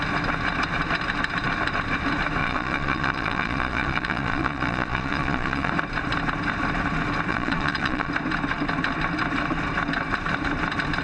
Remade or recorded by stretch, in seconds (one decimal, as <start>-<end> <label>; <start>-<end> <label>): 0.0-2.4 recorded; 2.4-5.7 remade; 5.7-7.3 recorded; 7.3-8.1 remade; 8.1-11.0 recorded